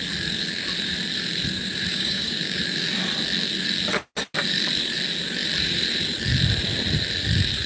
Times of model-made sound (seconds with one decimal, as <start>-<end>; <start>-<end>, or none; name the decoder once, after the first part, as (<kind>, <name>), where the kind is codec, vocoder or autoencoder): 1.9-2.6 (codec, DAC)